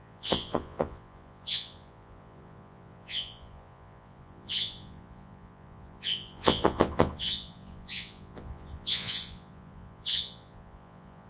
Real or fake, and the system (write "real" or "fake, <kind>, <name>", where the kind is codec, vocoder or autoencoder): fake, vocoder, Vocos